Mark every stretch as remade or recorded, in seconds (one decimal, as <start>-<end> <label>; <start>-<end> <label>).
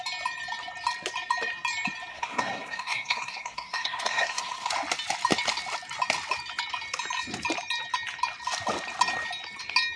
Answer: 0.0-2.1 recorded; 2.1-4.7 remade; 4.7-10.0 recorded